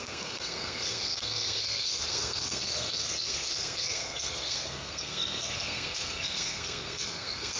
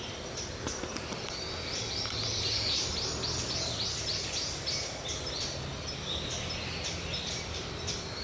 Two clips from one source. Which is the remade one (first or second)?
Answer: first